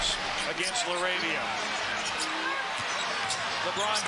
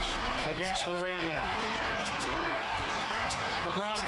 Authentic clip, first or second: first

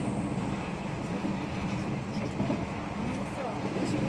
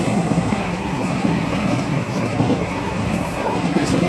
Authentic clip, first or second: first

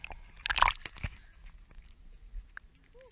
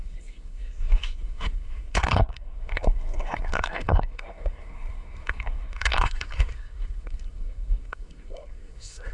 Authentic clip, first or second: first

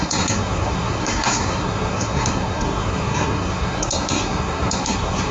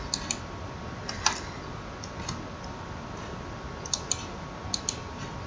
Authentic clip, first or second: second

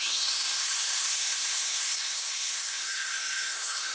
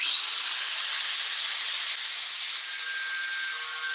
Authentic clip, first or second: second